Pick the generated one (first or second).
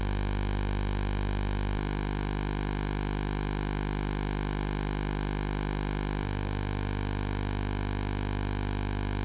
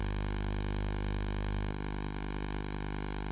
second